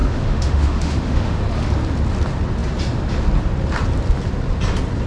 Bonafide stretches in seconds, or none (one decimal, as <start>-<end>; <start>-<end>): 1.4-5.1